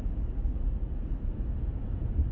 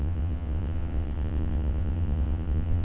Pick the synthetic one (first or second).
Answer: second